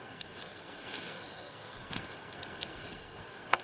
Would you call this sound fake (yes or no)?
yes